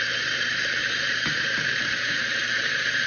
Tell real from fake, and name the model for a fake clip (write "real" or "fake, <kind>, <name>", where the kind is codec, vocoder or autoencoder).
fake, vocoder, BigVGAN v2